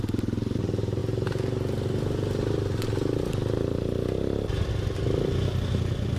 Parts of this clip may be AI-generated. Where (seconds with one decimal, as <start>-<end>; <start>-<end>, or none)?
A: none